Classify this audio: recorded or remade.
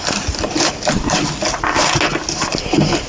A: recorded